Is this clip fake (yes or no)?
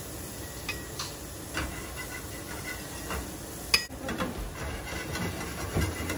no